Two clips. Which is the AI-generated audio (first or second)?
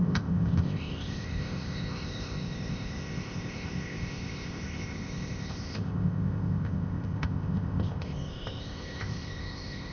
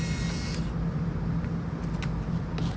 first